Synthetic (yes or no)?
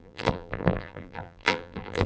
yes